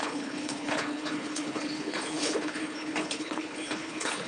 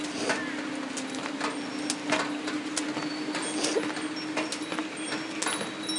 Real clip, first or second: second